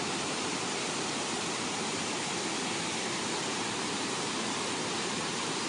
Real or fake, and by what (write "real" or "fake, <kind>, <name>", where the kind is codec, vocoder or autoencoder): fake, vocoder, BigVGAN v2